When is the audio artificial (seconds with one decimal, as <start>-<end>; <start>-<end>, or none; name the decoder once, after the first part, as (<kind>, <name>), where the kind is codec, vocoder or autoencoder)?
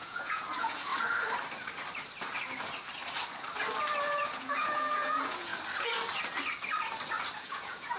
0.0-0.9 (vocoder, Vocos); 4.0-5.5; 7.4-8.0